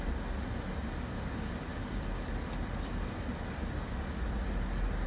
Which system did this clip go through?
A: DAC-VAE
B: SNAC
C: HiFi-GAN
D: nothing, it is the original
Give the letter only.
D